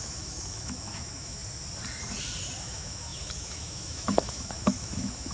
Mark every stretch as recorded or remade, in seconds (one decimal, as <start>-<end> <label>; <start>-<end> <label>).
0.0-1.4 remade; 1.4-2.6 recorded; 2.6-5.3 remade